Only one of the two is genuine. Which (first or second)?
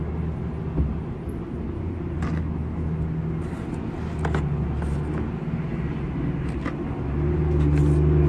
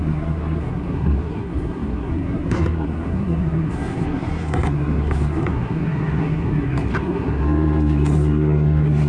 first